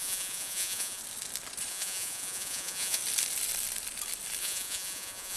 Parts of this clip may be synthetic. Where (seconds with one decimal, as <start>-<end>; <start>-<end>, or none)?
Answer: 0.0-1.0; 1.7-3.0; 4.4-5.4